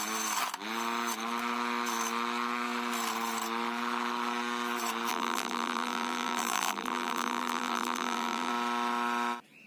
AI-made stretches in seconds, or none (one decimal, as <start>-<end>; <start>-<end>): 5.1-8.5